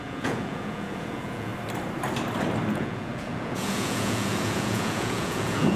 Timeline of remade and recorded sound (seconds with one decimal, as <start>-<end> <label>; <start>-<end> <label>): 0.0-1.5 remade; 1.5-2.7 recorded; 2.7-5.8 remade